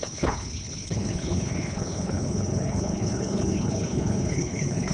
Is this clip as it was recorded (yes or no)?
no